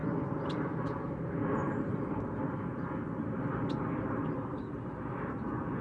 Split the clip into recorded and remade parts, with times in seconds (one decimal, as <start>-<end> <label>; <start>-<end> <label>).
0.0-5.8 recorded